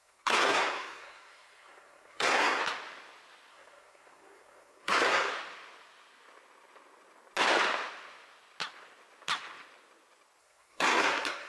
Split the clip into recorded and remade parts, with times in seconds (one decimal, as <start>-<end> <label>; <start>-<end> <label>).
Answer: 0.0-2.6 remade; 2.6-3.5 recorded; 3.5-5.3 remade; 5.3-10.4 recorded; 10.4-11.5 remade